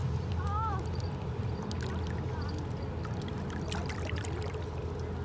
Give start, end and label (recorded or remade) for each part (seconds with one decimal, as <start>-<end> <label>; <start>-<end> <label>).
0.0-1.7 remade; 1.7-3.8 recorded; 3.8-4.3 remade; 4.3-5.2 recorded